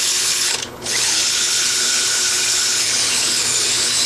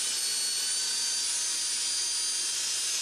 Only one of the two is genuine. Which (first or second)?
second